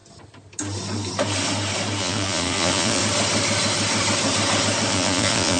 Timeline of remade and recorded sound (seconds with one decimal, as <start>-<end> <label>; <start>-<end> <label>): 0.0-2.0 recorded; 2.0-3.0 remade; 3.0-4.9 recorded; 4.9-5.6 remade